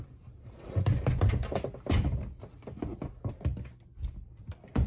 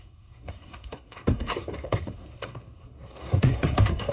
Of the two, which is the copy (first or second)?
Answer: second